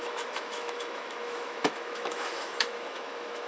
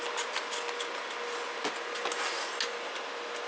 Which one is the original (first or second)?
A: second